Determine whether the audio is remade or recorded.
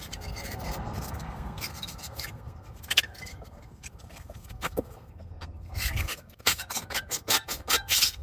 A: remade